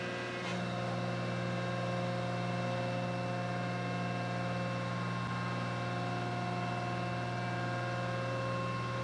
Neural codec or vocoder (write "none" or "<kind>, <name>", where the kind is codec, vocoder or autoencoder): none